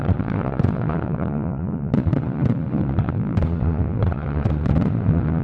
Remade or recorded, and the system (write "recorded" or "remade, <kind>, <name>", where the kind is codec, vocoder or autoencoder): remade, vocoder, Vocos